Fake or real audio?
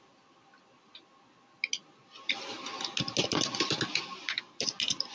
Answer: real